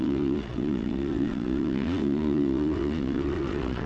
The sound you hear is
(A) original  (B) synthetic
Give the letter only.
B